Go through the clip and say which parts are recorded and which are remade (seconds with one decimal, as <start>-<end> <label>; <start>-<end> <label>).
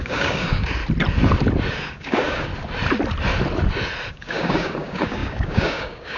0.0-0.8 remade; 0.8-1.7 recorded; 1.7-2.5 remade; 2.5-4.1 recorded; 4.1-6.2 remade